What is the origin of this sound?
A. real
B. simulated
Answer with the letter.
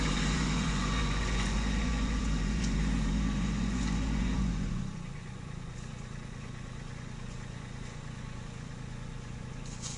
B